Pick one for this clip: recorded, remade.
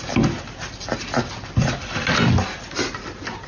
recorded